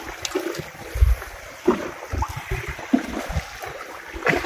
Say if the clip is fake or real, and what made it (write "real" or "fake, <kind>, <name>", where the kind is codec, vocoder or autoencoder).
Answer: real